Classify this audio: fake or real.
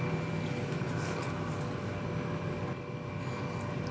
real